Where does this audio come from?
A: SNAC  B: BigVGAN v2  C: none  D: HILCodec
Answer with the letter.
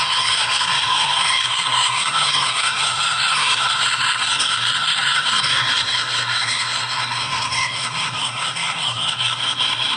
A